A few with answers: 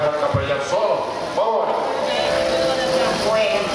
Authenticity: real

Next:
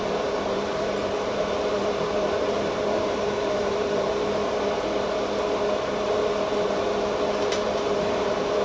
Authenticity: fake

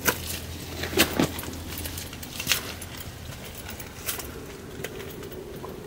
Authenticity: real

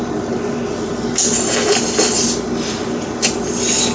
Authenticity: real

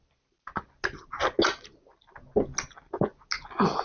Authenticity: real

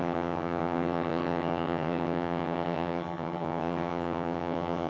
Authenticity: fake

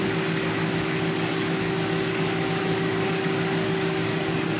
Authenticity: fake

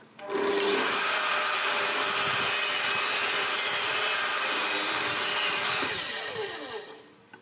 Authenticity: real